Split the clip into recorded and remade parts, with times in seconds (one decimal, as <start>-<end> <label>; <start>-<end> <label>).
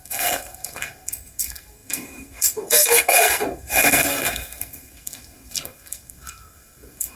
0.0-7.2 remade